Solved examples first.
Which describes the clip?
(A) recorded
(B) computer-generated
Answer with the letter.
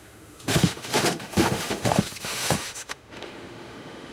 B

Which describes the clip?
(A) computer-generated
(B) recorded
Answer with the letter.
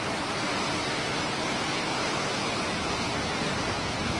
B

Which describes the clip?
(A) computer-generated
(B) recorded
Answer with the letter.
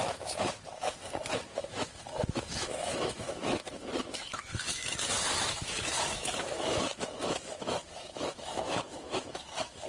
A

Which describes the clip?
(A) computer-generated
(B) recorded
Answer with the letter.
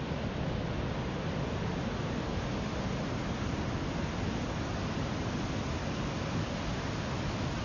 B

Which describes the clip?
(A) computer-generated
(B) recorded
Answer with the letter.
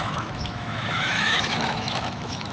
A